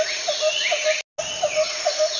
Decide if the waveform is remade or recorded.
recorded